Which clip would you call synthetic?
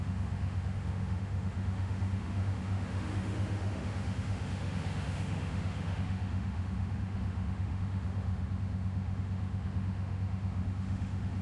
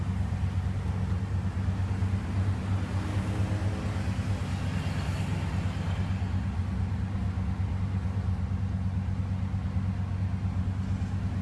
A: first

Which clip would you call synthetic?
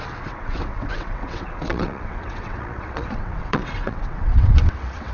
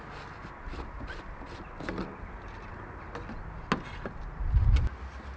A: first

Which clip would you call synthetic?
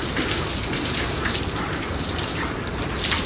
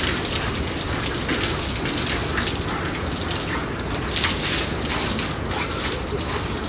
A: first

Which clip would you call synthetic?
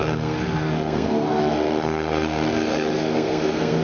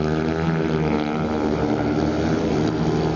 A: first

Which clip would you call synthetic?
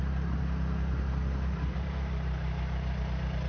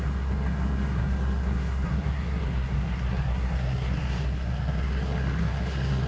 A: second